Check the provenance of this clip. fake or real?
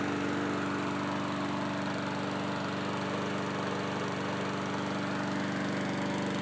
real